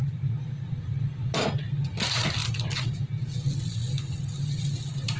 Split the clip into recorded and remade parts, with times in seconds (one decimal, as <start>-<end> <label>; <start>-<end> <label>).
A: 0.0-5.2 recorded